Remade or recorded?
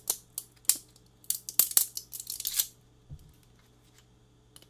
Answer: recorded